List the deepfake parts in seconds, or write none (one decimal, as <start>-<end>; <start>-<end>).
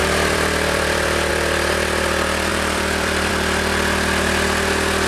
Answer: 0.0-1.3; 2.5-3.3